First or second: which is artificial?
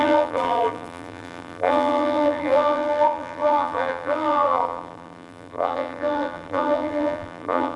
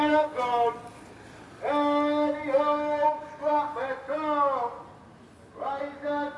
first